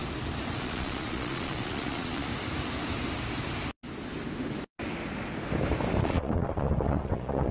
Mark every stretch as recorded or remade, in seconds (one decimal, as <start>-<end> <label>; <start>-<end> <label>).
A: 0.0-0.6 recorded; 0.6-2.3 remade; 2.3-6.0 recorded; 6.0-7.5 remade